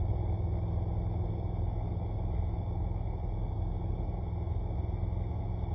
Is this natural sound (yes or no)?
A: yes